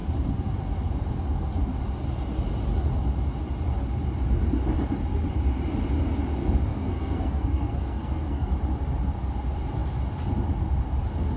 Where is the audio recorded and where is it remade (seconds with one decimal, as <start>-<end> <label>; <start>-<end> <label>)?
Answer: 0.0-6.7 recorded; 6.7-8.5 remade; 8.5-11.4 recorded